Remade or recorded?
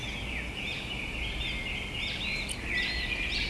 recorded